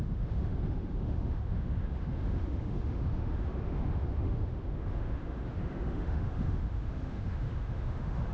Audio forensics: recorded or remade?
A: remade